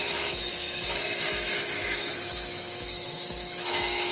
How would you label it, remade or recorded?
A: remade